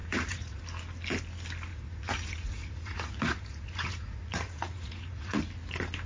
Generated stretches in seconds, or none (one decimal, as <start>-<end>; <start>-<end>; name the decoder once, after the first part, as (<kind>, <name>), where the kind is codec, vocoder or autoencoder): 0.0-0.6 (vocoder, Vocos); 1.7-5.4